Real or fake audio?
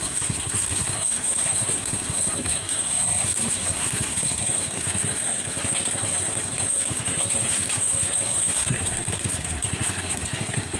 fake